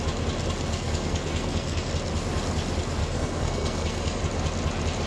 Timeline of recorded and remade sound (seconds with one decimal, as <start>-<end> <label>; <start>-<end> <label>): 0.0-0.7 recorded; 0.7-1.9 remade; 1.9-3.0 recorded; 3.0-4.2 remade; 4.2-5.1 recorded